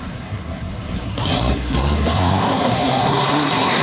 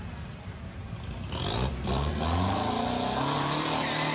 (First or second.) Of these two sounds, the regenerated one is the first